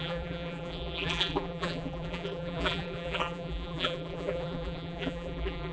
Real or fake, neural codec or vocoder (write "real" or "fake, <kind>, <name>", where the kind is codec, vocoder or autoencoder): fake, vocoder, BigVGAN v2